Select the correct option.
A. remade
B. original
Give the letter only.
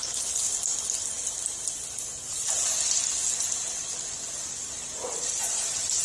B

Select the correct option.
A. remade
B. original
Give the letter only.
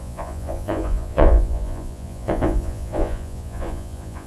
A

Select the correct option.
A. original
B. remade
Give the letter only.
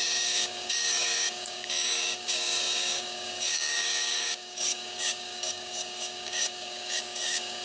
B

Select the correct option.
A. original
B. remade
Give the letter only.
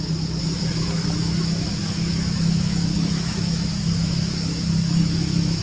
B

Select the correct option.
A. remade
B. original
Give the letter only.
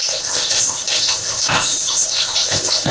A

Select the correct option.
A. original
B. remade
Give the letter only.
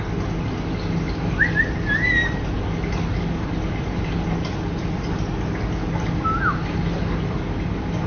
A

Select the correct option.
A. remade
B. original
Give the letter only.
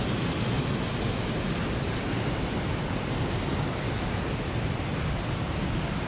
B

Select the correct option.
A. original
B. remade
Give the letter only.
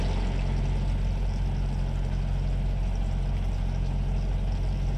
A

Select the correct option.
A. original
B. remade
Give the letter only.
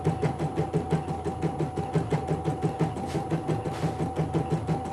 A